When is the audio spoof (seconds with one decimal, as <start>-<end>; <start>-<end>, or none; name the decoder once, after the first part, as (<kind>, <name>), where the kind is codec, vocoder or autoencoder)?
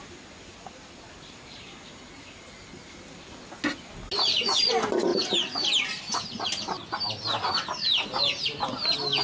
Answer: none